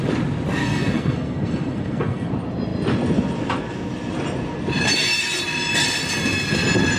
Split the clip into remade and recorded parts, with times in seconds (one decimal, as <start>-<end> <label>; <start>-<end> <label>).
0.0-0.6 recorded; 0.6-2.3 remade; 2.3-7.0 recorded